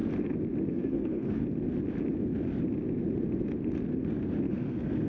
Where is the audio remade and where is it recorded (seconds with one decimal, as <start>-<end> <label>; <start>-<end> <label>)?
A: 0.0-0.7 recorded; 0.7-1.4 remade; 1.4-4.5 recorded; 4.5-5.1 remade